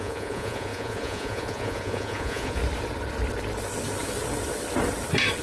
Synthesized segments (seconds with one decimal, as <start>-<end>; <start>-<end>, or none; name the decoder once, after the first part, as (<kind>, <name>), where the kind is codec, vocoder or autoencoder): 0.0-2.6 (vocoder, Vocos)